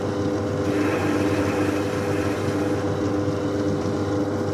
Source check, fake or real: real